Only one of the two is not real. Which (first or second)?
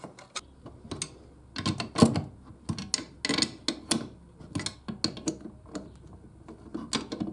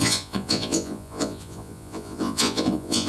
second